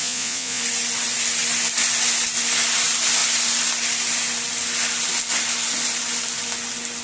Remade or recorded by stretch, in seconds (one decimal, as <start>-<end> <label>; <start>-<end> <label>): 0.0-0.6 remade; 0.6-7.0 recorded